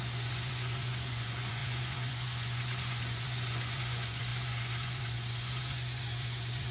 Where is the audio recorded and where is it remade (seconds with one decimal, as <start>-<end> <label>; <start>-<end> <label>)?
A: 0.0-6.7 remade